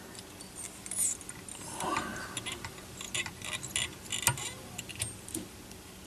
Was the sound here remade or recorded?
recorded